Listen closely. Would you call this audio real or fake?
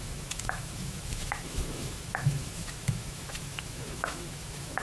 fake